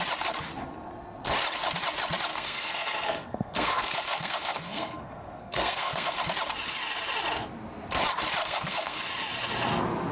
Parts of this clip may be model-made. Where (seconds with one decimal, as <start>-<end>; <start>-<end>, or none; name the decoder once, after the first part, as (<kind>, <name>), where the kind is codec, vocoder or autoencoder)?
2.3-6.2 (codec, SNAC); 8.4-9.0